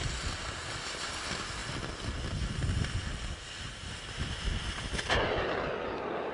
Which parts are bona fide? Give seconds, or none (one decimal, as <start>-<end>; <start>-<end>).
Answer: 0.0-6.3